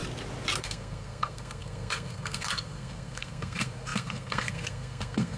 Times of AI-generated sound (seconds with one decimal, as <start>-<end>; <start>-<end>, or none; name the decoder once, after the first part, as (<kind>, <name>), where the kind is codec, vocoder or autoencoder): 0.6-5.4 (codec, SNAC)